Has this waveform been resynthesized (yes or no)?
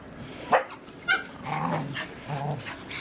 no